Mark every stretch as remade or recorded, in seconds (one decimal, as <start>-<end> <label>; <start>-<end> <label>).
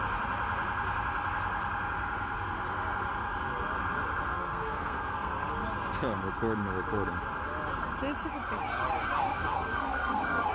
0.0-4.3 recorded; 4.3-5.5 remade; 5.5-9.3 recorded; 9.3-10.5 remade